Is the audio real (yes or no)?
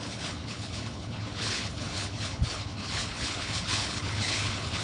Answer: no